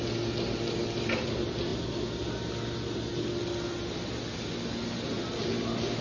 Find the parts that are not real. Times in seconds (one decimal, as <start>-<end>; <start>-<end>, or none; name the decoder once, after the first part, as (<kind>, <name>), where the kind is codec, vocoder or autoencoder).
none